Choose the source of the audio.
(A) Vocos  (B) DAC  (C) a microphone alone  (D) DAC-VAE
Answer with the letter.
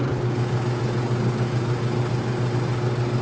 C